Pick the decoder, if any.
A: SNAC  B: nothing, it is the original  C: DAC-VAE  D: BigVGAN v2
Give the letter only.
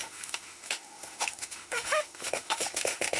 C